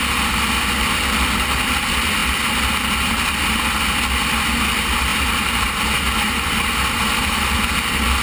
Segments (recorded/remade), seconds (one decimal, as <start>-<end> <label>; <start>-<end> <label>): 0.0-5.1 recorded; 5.1-7.5 remade; 7.5-8.2 recorded

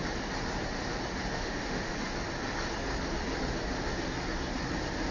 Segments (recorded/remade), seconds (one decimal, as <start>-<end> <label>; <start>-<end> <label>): 0.0-1.3 recorded; 1.3-1.9 remade; 1.9-5.1 recorded

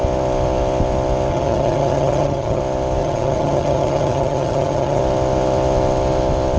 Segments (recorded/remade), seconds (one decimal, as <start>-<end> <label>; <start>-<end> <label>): 0.0-1.3 recorded; 1.3-2.6 remade; 2.6-3.0 recorded; 3.0-5.0 remade; 5.0-6.6 recorded

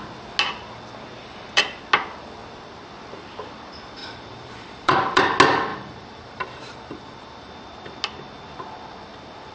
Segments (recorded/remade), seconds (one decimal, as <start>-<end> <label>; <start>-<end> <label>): 0.0-1.2 recorded; 1.2-1.8 remade; 1.8-4.0 recorded; 4.0-5.2 remade; 5.2-5.7 recorded; 5.7-7.5 remade; 7.5-9.5 recorded

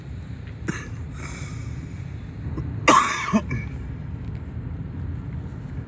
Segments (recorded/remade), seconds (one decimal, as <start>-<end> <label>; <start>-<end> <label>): 0.0-5.9 recorded

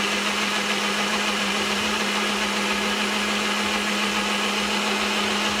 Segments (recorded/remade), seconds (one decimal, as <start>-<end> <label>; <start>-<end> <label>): 0.0-1.1 recorded; 1.1-2.3 remade; 2.3-5.6 recorded